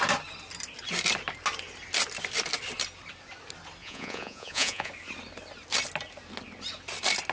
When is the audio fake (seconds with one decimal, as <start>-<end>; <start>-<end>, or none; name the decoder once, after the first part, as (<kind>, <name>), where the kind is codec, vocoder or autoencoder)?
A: 3.8-4.9 (vocoder, Vocos)